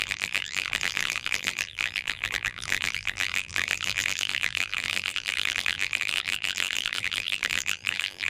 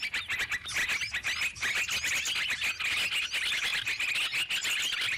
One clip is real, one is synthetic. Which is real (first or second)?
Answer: second